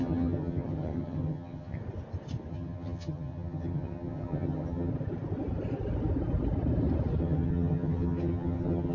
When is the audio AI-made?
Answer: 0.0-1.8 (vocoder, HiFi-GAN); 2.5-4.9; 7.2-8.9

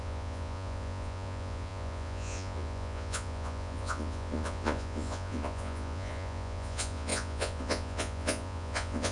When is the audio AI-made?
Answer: 0.0-9.1 (vocoder, Vocos)

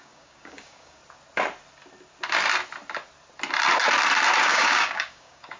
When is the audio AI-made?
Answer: 0.0-1.0 (codec, DAC); 4.4-5.6

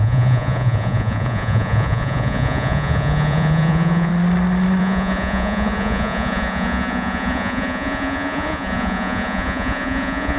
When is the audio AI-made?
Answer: 0.0-4.1 (vocoder, Vocos); 4.8-10.4

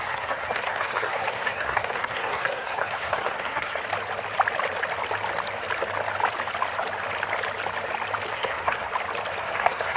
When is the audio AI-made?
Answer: 0.0-3.8 (codec, SNAC); 8.3-8.9; 9.4-10.0

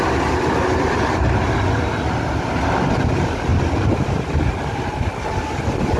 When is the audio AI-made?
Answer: none